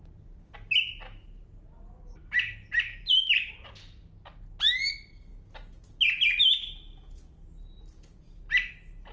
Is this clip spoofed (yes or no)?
no